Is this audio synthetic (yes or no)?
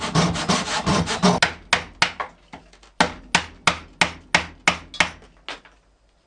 no